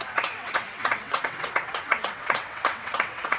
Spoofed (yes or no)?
yes